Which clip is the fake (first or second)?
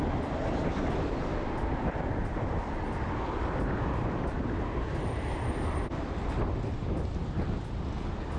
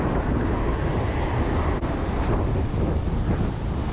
first